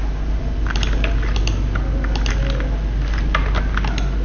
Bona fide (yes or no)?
yes